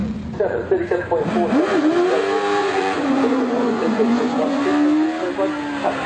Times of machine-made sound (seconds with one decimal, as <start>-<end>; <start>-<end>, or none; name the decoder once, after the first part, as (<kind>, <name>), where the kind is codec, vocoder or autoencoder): 0.0-0.8 (vocoder, Vocos); 2.6-4.6